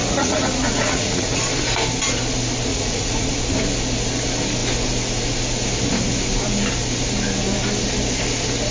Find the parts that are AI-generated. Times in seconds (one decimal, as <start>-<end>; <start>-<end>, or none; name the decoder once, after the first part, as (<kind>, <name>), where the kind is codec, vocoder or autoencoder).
0.0-1.4 (vocoder, Vocos); 2.7-3.4